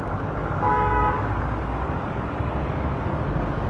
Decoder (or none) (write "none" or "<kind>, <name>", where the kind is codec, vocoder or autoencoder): codec, DAC